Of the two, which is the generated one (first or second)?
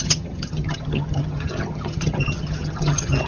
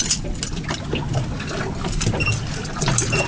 first